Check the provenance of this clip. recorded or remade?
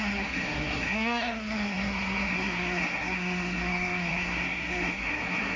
remade